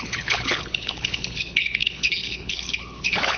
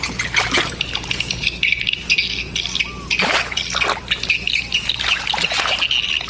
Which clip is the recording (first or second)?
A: second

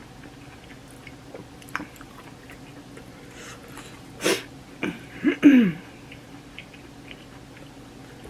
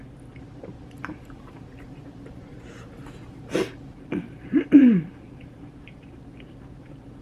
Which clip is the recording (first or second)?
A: first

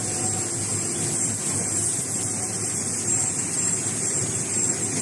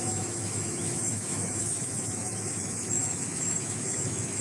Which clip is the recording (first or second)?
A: first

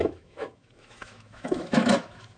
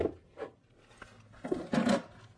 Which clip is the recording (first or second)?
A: second